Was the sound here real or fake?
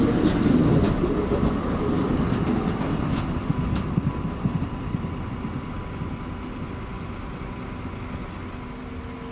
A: real